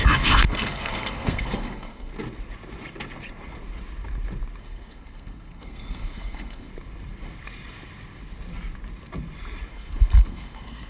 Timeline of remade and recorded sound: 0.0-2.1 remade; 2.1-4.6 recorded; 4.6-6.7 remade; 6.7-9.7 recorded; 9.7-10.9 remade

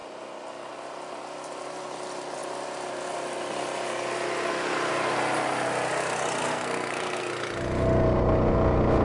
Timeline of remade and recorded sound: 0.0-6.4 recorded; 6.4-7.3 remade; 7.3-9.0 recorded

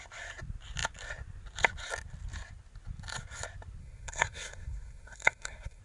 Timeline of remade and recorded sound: 0.0-3.8 recorded; 3.8-5.8 remade

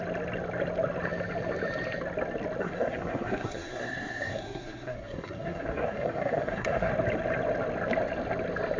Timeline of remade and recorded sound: 0.0-2.6 recorded; 2.6-6.9 remade; 6.9-8.8 recorded

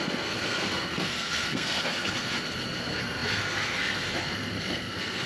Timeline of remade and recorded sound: 0.0-2.3 remade; 2.3-2.8 recorded; 2.8-5.3 remade

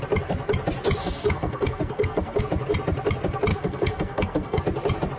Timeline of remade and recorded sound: 0.0-1.0 recorded; 1.0-2.4 remade; 2.4-3.5 recorded; 3.5-4.6 remade; 4.6-5.2 recorded

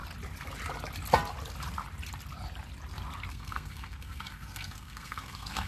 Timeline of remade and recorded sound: 0.0-3.3 recorded; 3.3-5.7 remade

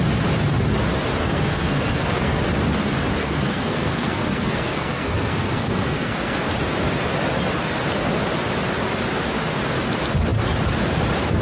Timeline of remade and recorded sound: 0.0-1.2 recorded; 1.2-2.4 remade; 2.4-3.2 recorded; 3.2-6.5 remade; 6.5-11.4 recorded